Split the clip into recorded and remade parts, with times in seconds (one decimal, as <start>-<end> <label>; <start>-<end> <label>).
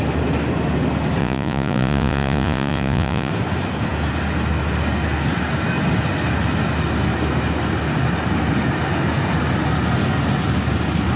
0.0-1.2 recorded; 1.2-3.3 remade; 3.3-11.2 recorded